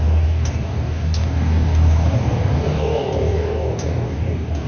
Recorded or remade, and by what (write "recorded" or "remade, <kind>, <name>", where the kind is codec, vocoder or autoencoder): remade, codec, DAC